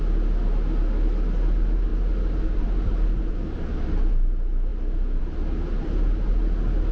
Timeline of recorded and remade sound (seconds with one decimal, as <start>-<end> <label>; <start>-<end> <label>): 0.0-6.9 recorded